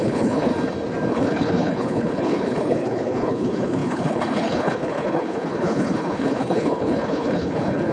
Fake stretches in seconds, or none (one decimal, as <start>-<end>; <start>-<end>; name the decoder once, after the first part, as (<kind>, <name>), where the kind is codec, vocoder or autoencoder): 0.0-0.5 (codec, HILCodec); 1.1-7.9